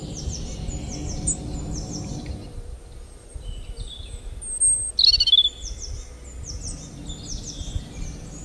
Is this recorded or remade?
recorded